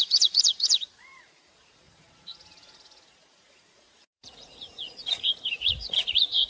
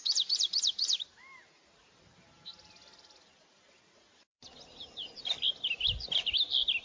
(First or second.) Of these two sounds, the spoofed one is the first